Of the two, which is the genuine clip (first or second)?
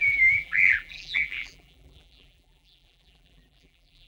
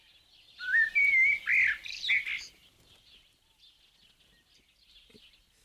second